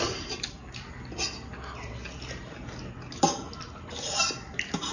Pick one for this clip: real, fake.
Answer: real